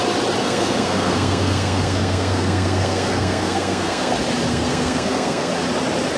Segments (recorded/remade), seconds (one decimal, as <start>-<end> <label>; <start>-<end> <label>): 0.0-0.4 recorded; 0.4-4.1 remade; 4.1-4.5 recorded; 4.5-5.5 remade; 5.5-6.2 recorded